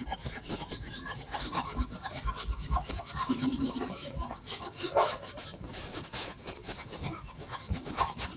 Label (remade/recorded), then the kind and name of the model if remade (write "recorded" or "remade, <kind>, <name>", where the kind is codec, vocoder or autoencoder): remade, autoencoder, DAC-VAE